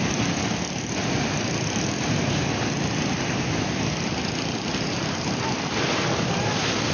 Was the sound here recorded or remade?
recorded